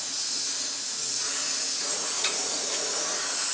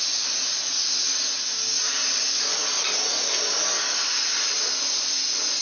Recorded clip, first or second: second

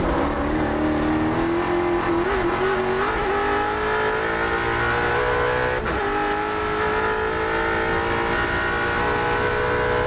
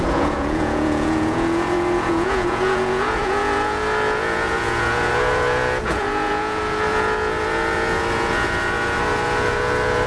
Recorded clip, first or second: first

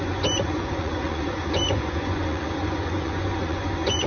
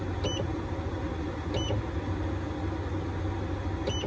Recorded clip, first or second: second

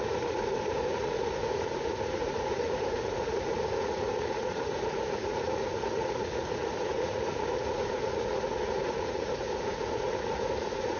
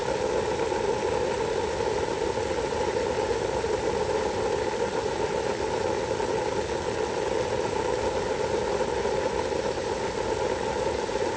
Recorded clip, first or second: second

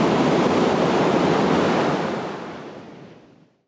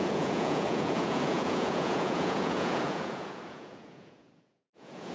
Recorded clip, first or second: first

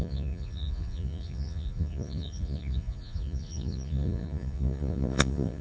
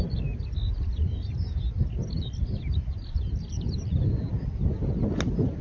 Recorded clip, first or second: second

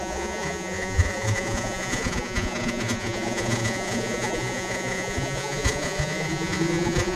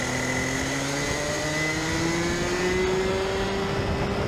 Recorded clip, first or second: second